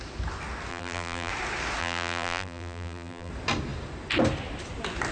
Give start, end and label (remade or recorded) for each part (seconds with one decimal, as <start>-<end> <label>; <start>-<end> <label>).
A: 0.0-0.7 recorded; 0.7-1.3 remade; 1.3-1.8 recorded; 1.8-3.3 remade; 3.3-5.1 recorded